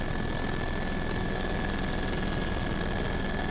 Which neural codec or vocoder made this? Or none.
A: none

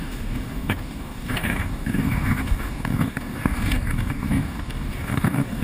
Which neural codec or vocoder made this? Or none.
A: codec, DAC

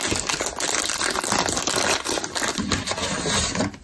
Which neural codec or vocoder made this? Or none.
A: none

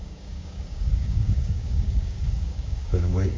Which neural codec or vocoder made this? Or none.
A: codec, DAC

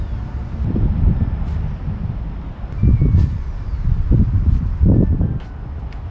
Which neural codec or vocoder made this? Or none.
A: none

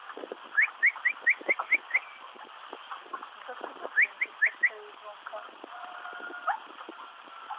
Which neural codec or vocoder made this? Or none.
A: none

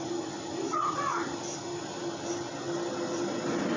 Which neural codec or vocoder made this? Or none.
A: none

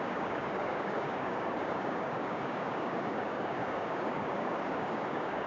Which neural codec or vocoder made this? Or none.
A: codec, DAC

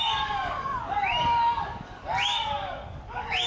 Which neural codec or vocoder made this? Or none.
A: codec, DAC